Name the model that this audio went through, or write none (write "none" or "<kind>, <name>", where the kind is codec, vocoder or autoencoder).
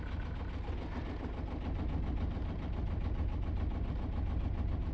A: none